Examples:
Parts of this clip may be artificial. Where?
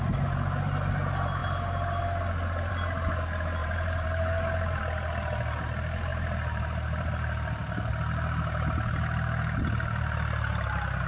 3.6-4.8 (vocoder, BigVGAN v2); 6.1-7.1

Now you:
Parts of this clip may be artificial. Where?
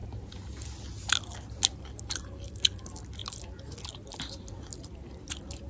none